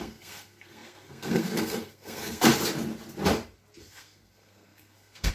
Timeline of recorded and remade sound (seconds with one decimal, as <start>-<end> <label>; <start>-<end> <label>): 0.0-2.5 remade; 2.5-3.8 recorded; 3.8-5.3 remade